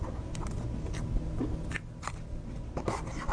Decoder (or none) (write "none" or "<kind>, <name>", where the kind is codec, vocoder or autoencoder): none